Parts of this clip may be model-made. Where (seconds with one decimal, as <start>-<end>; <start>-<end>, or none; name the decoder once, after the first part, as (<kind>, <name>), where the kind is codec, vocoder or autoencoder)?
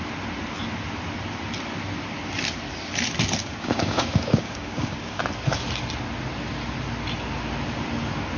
3.4-5.2 (codec, DAC)